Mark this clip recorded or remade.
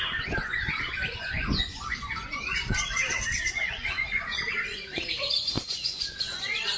remade